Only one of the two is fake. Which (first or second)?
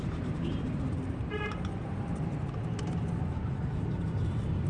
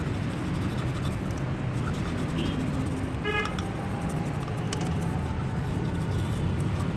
first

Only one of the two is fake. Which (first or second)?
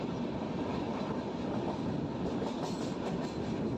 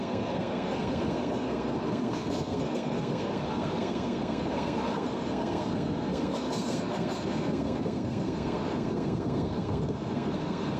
second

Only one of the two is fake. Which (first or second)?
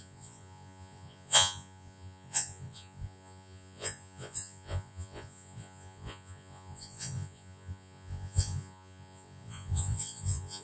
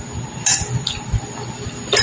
first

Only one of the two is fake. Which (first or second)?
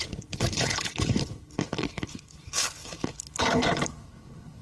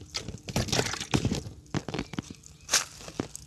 first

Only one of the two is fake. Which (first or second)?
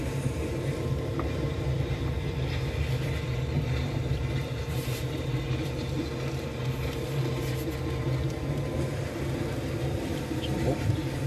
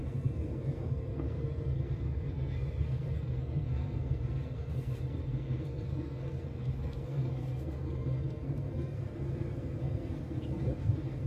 second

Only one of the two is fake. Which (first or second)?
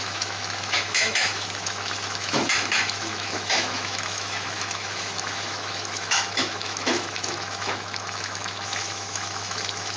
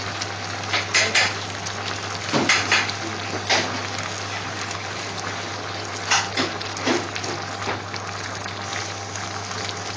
first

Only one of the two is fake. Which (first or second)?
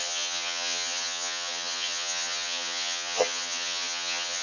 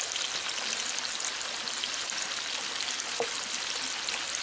first